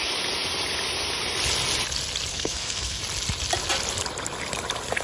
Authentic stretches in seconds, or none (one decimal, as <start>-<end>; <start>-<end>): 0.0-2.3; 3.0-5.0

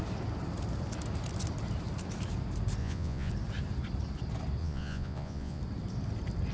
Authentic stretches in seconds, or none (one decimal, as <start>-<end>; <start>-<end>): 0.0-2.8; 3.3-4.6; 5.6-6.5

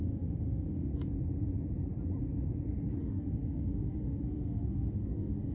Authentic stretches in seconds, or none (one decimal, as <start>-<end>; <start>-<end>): 0.9-3.0